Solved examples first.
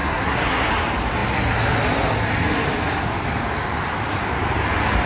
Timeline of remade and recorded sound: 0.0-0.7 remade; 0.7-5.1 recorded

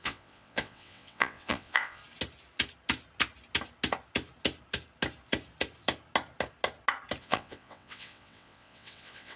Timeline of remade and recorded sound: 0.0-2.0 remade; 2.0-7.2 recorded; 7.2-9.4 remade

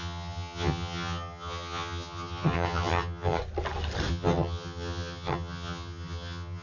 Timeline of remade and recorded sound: 0.0-3.4 remade; 3.4-4.1 recorded; 4.1-6.6 remade

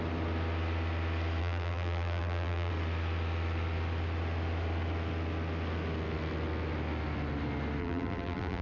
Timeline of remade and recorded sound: 0.0-1.4 recorded; 1.4-2.7 remade; 2.7-7.8 recorded; 7.8-8.6 remade

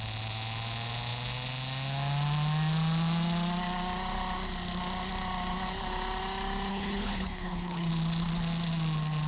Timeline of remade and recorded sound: 0.0-6.7 recorded; 6.7-7.9 remade; 7.9-9.3 recorded

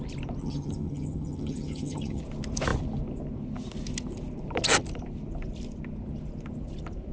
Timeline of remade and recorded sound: 0.0-0.4 recorded; 0.4-2.2 remade; 2.2-7.1 recorded